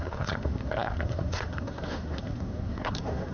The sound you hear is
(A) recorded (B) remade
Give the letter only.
B